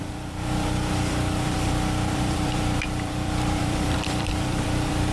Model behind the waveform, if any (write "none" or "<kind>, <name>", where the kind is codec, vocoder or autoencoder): vocoder, BigVGAN v2